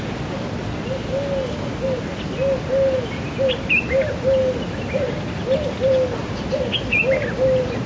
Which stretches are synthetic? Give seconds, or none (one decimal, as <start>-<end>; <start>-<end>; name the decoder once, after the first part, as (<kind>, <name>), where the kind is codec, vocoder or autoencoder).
none